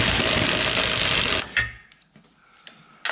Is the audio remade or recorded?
recorded